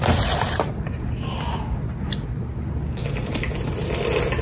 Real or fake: real